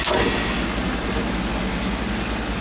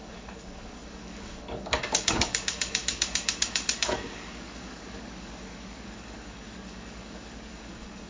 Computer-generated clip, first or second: second